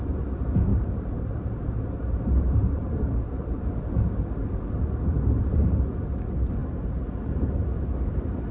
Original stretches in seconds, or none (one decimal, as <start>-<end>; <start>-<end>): 0.0-0.7; 3.7-5.1; 5.9-6.6; 7.6-8.5